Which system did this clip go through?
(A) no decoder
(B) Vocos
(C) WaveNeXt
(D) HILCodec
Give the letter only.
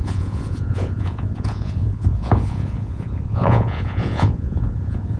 B